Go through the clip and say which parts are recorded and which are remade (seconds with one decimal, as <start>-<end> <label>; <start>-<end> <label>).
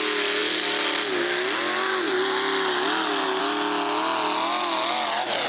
0.0-5.5 recorded